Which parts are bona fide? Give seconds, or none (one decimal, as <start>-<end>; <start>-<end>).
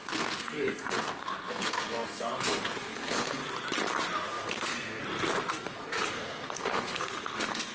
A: 3.4-4.2; 5.0-5.5